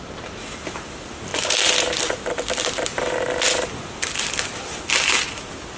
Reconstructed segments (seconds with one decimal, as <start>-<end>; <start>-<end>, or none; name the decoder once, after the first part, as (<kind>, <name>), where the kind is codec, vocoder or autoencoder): none